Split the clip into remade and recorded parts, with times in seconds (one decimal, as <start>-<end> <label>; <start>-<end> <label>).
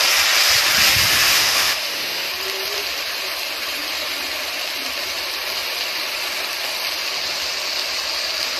0.0-1.1 recorded; 1.1-2.3 remade; 2.3-8.6 recorded